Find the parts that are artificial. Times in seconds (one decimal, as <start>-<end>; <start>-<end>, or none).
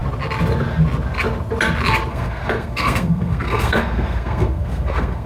2.1-5.3